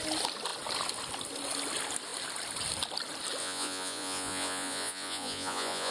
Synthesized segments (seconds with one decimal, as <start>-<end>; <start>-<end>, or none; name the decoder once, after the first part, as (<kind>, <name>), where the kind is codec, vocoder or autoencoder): 3.4-5.9 (vocoder, Vocos)